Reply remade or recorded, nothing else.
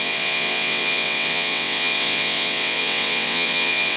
remade